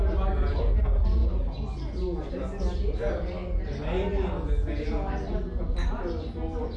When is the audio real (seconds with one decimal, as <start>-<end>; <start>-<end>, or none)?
0.0-6.8